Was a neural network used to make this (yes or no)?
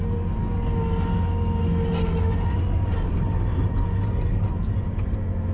no